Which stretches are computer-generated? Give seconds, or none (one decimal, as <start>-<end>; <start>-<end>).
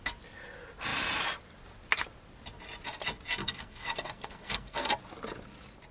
3.4-4.9